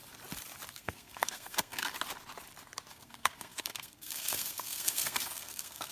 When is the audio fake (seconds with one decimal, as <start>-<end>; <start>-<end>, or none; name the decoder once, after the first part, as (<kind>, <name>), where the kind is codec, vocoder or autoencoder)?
0.7-1.9 (codec, SNAC); 2.9-5.9